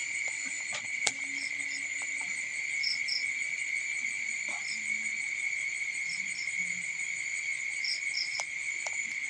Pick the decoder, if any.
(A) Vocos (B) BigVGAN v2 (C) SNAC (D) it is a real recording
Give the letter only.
B